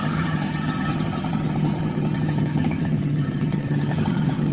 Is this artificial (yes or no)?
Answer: yes